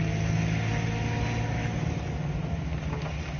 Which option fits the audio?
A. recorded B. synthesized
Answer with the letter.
A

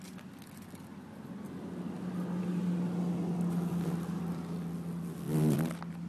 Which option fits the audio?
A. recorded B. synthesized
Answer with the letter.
A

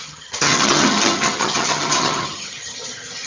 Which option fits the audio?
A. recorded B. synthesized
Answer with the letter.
B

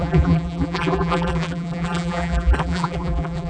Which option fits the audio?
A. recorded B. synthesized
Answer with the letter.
B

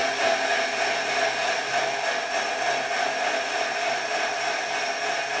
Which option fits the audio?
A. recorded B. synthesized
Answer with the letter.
A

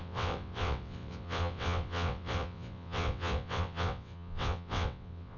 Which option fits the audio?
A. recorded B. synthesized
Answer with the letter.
B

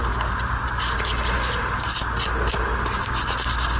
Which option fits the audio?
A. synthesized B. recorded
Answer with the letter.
B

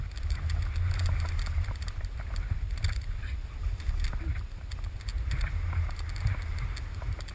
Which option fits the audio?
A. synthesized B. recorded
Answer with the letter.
B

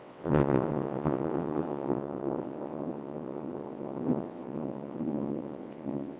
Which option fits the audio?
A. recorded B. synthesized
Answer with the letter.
B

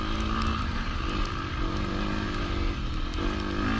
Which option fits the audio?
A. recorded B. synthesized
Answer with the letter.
A